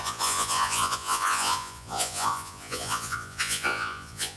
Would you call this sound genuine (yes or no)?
no